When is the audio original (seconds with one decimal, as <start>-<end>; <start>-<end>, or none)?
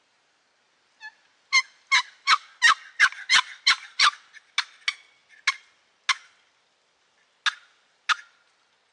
0.0-8.9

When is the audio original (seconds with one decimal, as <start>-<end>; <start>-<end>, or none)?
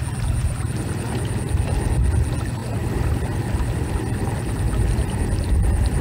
0.0-0.4; 1.0-2.6; 3.2-6.0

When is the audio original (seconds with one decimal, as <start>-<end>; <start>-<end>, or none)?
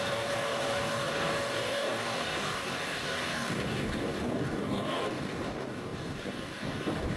none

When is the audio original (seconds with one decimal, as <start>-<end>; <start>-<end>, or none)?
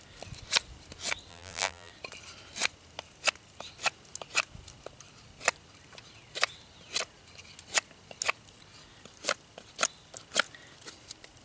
0.0-1.3; 1.9-11.4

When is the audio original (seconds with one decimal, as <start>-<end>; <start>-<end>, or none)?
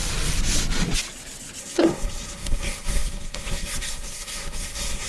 0.0-1.6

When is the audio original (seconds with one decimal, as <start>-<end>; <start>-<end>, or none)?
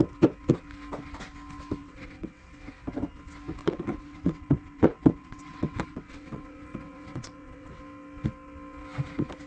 0.0-1.8; 2.4-3.6; 7.8-9.5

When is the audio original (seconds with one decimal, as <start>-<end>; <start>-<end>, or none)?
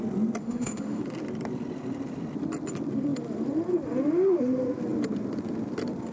0.0-0.4; 1.0-6.1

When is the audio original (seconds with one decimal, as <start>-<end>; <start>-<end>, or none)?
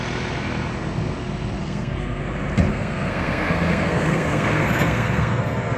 0.0-1.6; 2.2-2.7